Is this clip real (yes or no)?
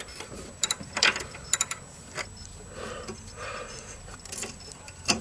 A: no